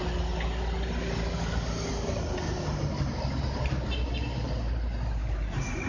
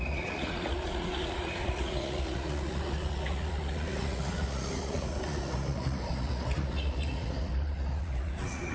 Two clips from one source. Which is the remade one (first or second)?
second